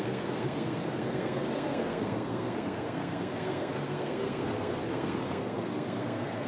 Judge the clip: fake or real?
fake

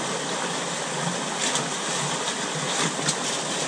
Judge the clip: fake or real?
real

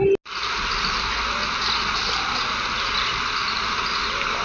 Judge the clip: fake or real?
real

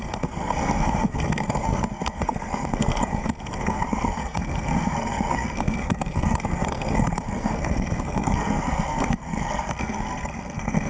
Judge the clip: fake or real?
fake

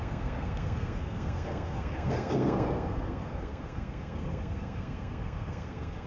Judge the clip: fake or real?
fake